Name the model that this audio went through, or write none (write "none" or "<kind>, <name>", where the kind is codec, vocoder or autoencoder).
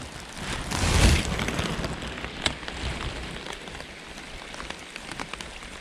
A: none